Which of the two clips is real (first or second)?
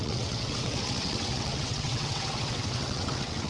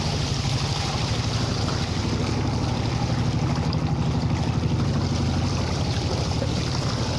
second